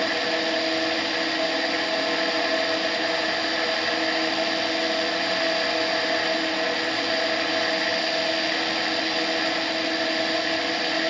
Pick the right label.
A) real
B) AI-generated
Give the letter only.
A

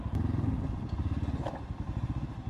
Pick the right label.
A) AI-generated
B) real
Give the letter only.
B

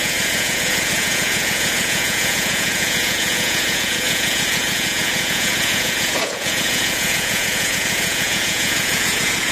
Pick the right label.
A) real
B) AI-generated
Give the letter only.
B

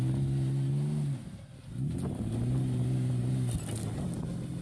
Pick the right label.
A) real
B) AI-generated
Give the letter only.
A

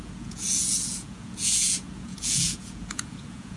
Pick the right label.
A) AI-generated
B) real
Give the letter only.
A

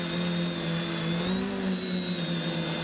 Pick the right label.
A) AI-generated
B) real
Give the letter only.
B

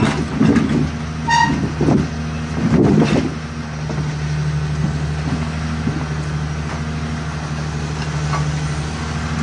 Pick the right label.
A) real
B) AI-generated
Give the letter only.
A